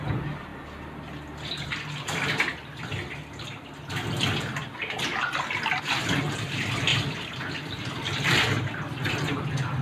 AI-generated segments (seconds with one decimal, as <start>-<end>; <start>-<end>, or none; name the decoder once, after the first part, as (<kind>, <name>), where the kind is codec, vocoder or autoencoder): 0.0-0.5 (vocoder, BigVGAN v2); 5.8-6.9; 8.6-9.8